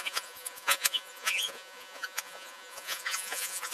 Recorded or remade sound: remade